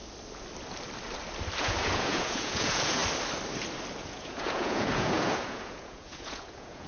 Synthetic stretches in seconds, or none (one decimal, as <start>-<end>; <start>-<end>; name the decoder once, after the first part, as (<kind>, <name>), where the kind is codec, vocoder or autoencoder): 1.6-3.0 (vocoder, Vocos); 4.0-6.9